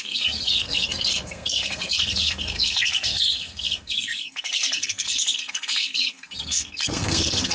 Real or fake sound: fake